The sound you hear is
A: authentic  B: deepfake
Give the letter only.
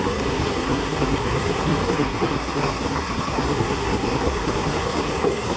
B